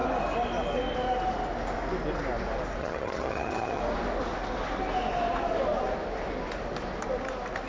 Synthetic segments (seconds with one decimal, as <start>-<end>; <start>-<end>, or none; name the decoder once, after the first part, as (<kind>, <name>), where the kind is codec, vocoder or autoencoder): 2.8-3.8 (vocoder, HiFi-GAN)